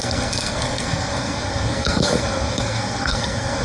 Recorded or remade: remade